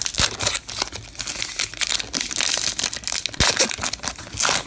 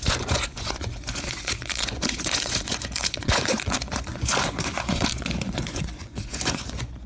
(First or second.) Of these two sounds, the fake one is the second